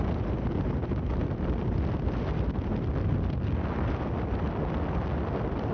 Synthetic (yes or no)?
no